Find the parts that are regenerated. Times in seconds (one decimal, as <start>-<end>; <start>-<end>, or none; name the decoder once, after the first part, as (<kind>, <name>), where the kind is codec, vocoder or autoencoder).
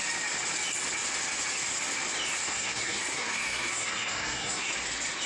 2.3-4.7 (codec, SNAC)